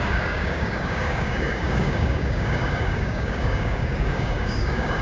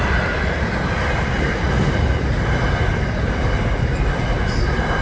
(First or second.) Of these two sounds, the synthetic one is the first